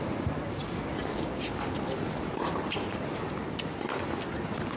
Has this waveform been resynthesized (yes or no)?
no